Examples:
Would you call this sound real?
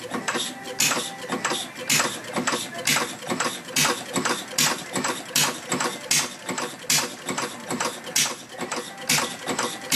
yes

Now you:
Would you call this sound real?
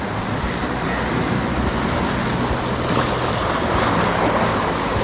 yes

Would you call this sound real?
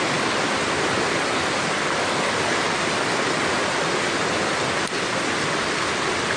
yes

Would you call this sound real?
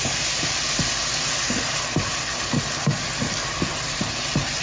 yes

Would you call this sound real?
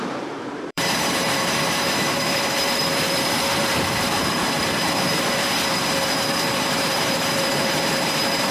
no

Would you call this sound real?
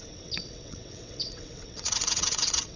no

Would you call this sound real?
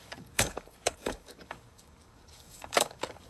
no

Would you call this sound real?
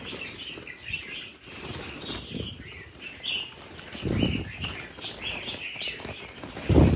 yes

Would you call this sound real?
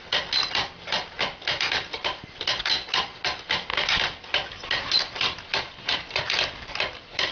yes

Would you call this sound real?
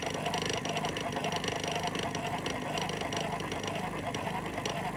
yes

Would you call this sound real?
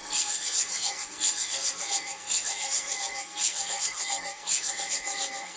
no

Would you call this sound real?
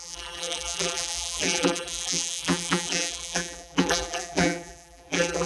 no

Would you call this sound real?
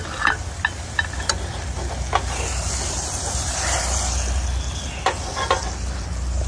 yes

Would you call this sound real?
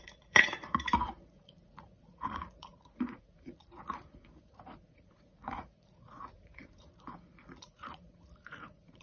no